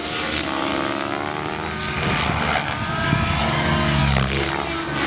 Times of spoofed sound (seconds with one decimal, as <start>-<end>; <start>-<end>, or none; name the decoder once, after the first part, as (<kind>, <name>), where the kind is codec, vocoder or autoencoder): 0.0-0.7 (codec, DAC); 3.4-4.0